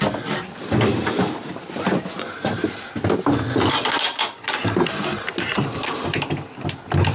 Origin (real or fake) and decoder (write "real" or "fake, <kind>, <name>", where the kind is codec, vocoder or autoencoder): real